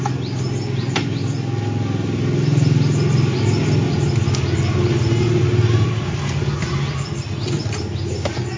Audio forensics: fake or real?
real